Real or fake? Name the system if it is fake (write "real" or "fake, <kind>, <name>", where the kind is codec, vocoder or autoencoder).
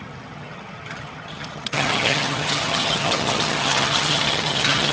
fake, vocoder, HiFi-GAN